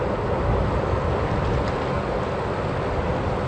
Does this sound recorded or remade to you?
recorded